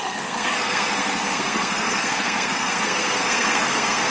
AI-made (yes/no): yes